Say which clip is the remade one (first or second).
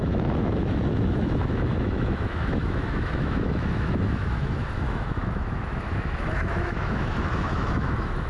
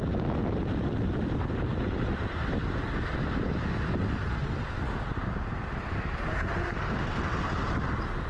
first